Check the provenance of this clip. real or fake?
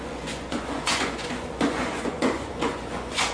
fake